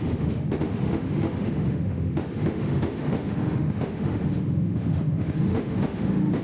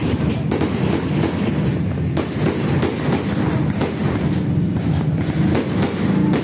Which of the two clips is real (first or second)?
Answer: second